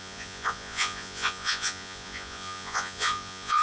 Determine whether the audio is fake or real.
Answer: fake